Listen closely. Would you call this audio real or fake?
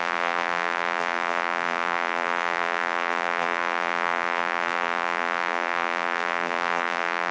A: fake